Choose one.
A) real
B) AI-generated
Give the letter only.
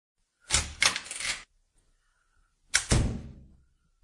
A